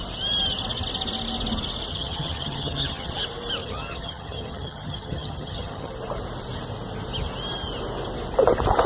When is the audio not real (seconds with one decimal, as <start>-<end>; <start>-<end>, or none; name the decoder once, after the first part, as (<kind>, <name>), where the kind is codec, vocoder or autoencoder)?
1.9-3.1 (vocoder, HiFi-GAN); 3.6-5.9